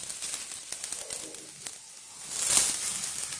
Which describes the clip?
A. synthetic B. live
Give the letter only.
B